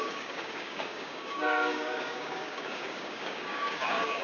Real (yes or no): no